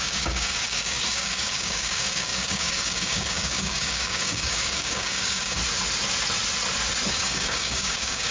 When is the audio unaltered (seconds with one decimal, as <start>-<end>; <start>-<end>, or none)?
5.6-7.1